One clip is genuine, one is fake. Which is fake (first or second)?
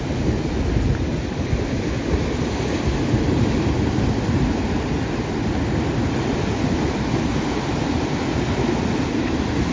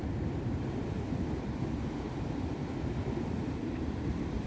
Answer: second